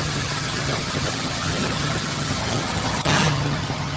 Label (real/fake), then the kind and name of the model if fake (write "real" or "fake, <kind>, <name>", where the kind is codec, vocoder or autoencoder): fake, vocoder, HiFi-GAN